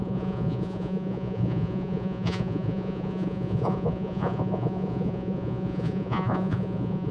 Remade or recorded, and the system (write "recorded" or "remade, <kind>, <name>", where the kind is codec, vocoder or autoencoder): remade, vocoder, Vocos